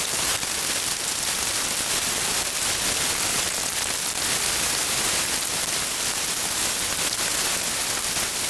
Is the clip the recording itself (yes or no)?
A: yes